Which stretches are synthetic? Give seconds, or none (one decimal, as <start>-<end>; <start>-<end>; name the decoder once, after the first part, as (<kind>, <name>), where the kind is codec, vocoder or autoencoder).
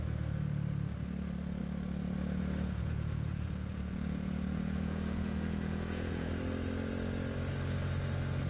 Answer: 2.8-6.3 (vocoder, Vocos)